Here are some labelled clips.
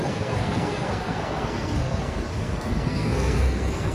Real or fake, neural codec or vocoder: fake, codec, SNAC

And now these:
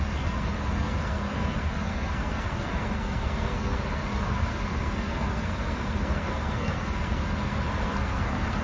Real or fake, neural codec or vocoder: fake, codec, SNAC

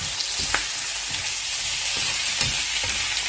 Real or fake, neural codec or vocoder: real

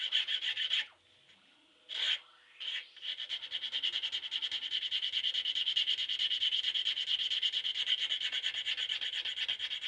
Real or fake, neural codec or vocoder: real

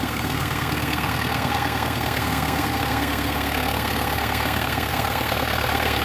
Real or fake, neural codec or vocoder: fake, codec, SNAC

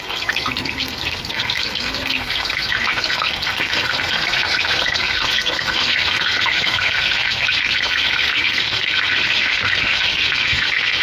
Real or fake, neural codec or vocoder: fake, codec, SNAC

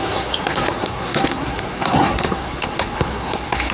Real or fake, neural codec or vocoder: fake, codec, SNAC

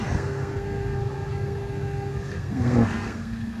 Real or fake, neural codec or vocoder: fake, codec, SNAC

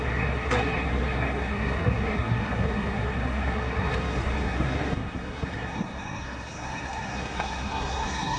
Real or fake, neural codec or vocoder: fake, codec, SNAC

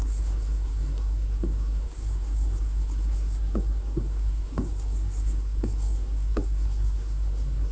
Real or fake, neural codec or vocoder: fake, codec, SNAC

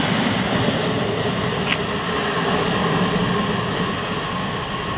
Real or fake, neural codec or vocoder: real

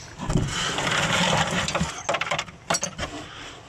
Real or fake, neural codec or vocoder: real